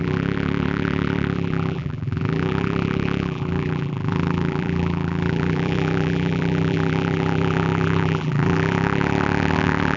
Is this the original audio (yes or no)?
no